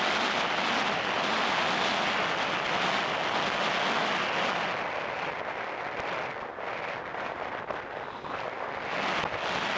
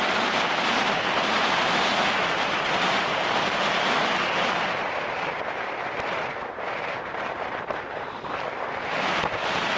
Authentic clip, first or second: first